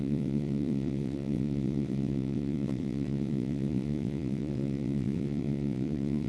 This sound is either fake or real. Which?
fake